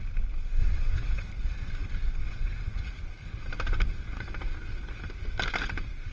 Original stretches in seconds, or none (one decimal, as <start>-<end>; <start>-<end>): 0.0-0.6; 1.3-2.2; 2.9-6.1